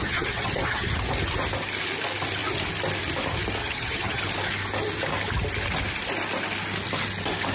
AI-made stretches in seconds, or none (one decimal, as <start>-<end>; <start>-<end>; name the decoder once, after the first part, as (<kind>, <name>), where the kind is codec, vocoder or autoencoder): 0.0-0.9 (vocoder, HiFi-GAN); 3.6-4.2